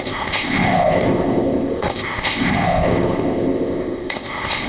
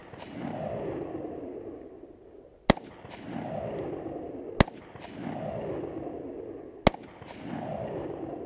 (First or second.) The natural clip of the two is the second